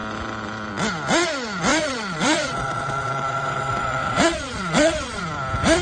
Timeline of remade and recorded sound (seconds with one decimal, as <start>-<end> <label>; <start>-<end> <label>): 0.0-1.7 recorded; 1.7-5.2 remade; 5.2-5.8 recorded